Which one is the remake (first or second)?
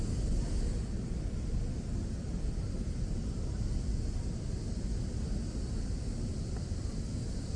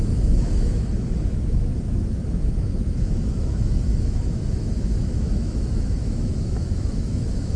second